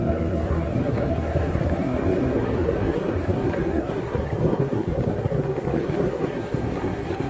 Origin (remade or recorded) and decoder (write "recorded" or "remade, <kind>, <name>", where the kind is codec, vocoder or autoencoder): remade, codec, SNAC